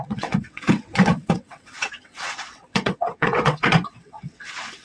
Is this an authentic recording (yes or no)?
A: no